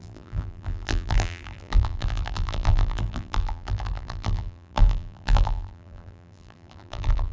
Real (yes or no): no